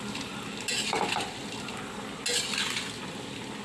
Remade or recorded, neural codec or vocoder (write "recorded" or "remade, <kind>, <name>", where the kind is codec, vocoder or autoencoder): recorded